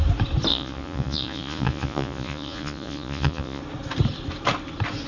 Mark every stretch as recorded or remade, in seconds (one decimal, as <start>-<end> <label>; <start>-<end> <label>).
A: 0.0-0.5 recorded; 0.5-3.6 remade; 3.6-5.1 recorded